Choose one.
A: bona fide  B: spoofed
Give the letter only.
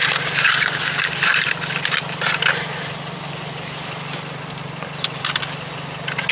B